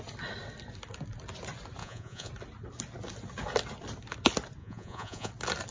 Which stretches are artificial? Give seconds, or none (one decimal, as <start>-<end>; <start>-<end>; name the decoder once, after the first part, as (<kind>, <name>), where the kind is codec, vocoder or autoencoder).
1.8-2.3 (vocoder, Vocos); 4.6-5.3

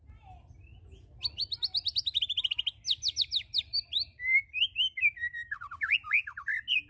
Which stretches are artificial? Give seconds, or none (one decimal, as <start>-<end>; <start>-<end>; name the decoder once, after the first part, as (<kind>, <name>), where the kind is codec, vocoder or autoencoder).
none

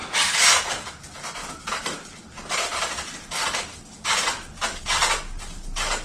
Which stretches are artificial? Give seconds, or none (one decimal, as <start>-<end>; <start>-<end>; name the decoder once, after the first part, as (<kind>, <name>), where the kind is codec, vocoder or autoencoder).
1.4-4.8 (vocoder, BigVGAN v2)

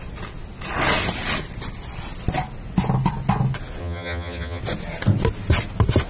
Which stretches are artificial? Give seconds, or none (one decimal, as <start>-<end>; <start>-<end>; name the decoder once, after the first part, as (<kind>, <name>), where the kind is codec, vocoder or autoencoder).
3.8-4.6 (vocoder, HiFi-GAN)

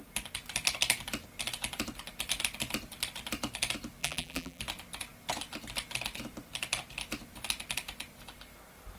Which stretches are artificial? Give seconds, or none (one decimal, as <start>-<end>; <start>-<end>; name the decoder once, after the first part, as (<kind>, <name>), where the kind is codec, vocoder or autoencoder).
4.0-4.6 (vocoder, BigVGAN v2)

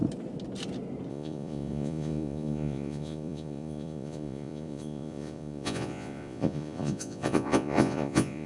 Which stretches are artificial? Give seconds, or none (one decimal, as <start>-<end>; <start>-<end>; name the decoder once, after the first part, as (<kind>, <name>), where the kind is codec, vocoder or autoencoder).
1.1-8.5 (vocoder, Vocos)

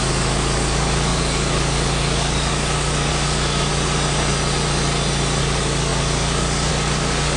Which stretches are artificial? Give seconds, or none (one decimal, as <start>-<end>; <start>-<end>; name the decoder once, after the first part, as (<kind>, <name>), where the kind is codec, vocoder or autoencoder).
0.0-3.7 (codec, DAC); 5.4-7.4